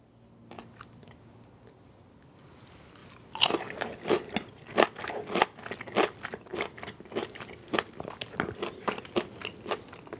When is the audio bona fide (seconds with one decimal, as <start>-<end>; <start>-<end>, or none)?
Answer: 0.0-10.2